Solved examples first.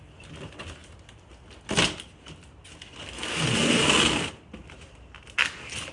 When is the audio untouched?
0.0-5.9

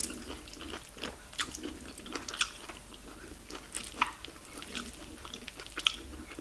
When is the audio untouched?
0.0-6.4